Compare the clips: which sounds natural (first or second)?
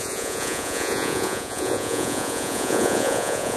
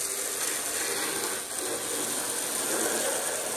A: second